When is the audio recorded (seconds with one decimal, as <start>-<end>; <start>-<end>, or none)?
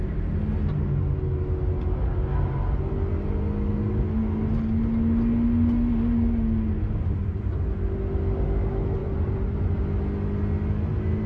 0.0-7.0; 7.6-9.0; 9.8-11.3